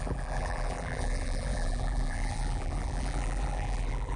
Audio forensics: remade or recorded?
remade